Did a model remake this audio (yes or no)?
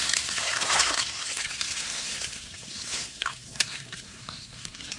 yes